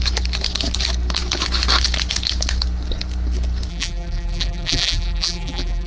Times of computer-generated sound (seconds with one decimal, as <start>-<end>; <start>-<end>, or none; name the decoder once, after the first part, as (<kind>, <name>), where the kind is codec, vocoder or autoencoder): 3.7-5.9 (vocoder, BigVGAN v2)